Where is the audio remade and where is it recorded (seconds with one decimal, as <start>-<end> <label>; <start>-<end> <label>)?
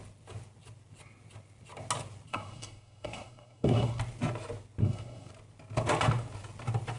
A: 0.0-2.3 recorded; 2.3-4.0 remade; 4.0-4.8 recorded; 4.8-5.3 remade; 5.3-7.0 recorded